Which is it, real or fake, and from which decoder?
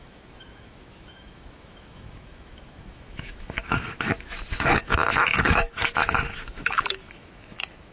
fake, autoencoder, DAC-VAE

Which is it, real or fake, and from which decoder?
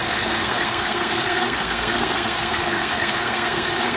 fake, codec, SNAC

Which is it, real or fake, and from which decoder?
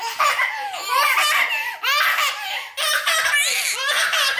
real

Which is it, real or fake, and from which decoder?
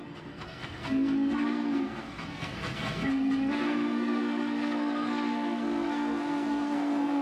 fake, codec, SNAC